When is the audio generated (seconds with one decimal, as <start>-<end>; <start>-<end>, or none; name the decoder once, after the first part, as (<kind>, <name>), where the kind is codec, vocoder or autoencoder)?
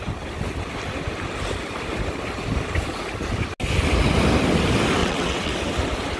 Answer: 5.0-5.5 (vocoder, WaveNeXt)